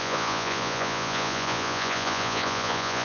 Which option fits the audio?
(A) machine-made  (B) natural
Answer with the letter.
A